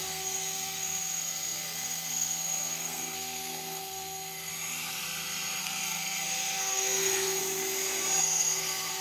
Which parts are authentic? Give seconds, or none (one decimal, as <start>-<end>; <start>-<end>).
4.5-5.6; 7.4-8.2